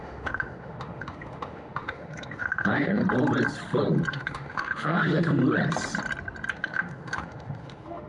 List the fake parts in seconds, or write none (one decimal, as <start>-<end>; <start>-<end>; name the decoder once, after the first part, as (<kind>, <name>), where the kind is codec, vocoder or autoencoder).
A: 0.0-3.0 (autoencoder, DAC-VAE); 4.1-5.4; 6.5-8.1